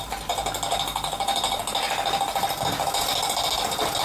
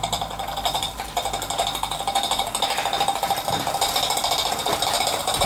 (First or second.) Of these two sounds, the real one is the first